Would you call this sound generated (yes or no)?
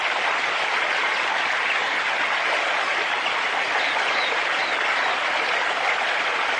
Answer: no